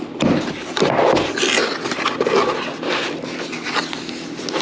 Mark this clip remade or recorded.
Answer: recorded